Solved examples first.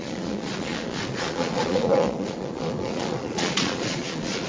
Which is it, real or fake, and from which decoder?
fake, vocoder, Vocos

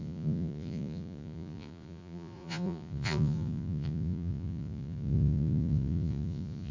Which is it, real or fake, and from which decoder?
fake, vocoder, Vocos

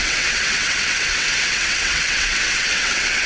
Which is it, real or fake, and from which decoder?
fake, vocoder, WaveNeXt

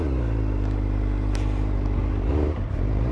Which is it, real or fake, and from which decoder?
real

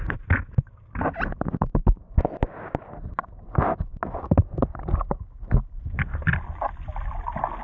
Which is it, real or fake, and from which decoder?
real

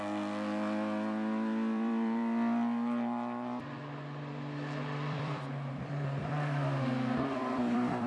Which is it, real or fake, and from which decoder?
fake, vocoder, BigVGAN v2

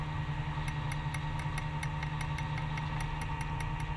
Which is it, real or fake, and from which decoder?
real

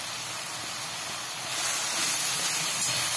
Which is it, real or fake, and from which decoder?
real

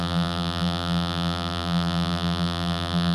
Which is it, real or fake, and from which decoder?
fake, vocoder, BigVGAN v2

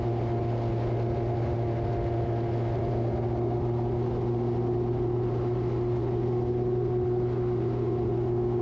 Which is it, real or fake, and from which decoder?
real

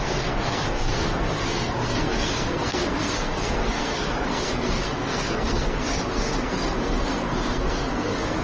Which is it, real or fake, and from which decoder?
fake, codec, SNAC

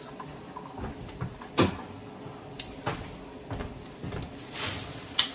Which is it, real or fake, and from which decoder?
real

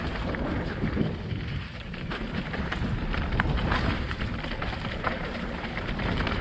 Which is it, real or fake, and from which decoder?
fake, vocoder, BigVGAN v2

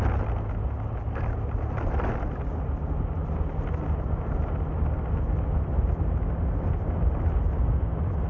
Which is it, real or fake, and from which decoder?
real